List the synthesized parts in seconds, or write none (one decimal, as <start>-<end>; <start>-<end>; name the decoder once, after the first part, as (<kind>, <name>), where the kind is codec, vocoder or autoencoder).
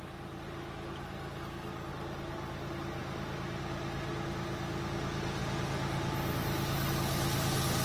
1.0-1.9 (codec, SNAC)